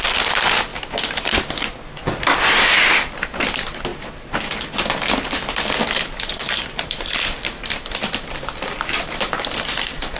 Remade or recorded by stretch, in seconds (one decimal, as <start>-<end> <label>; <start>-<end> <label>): 0.0-0.7 remade; 0.7-2.4 recorded; 2.4-3.9 remade; 3.9-5.9 recorded; 5.9-10.2 remade